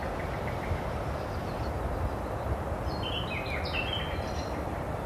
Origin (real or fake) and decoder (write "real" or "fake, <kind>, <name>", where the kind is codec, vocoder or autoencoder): real